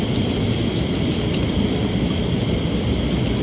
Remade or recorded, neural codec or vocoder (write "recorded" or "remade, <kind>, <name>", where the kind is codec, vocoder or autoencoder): recorded